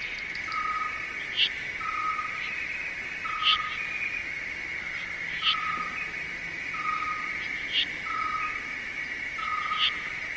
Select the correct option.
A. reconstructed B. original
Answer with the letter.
B